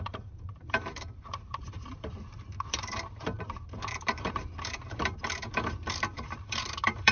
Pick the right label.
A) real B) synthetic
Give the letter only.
B